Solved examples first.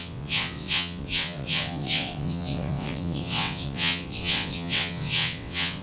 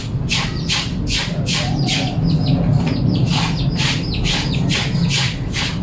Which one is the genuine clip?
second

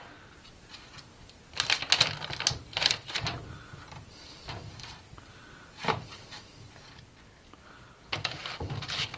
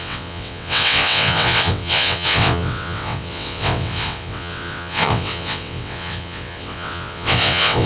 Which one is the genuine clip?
first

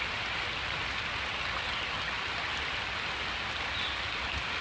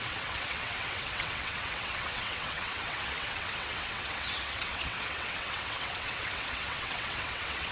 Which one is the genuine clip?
first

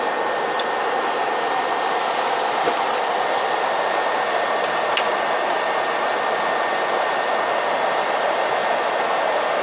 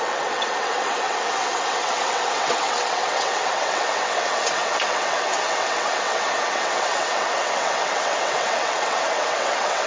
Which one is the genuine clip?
first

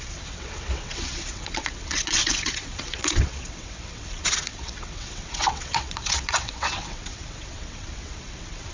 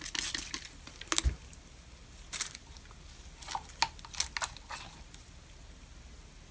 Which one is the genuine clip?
second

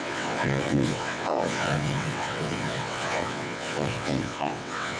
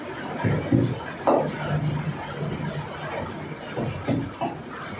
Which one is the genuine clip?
second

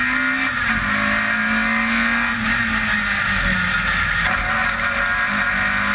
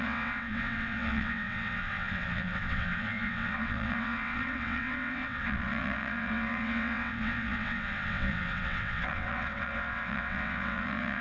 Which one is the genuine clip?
first